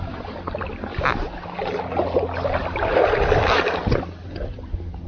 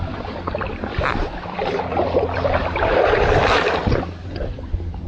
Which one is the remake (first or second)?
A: second